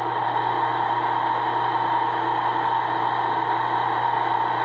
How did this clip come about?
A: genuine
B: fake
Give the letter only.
A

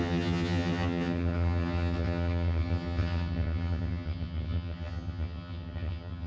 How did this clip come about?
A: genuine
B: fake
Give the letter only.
B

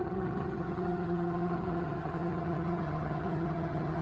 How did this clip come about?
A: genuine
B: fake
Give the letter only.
B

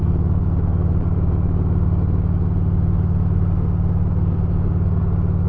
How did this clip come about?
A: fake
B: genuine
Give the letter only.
B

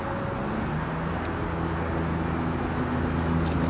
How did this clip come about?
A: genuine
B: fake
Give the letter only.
A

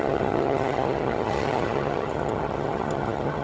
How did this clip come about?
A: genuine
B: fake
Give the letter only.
B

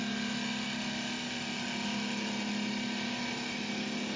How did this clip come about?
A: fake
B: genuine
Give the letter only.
B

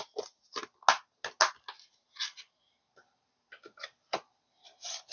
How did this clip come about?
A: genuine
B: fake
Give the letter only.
A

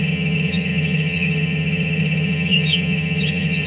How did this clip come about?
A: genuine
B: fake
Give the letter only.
B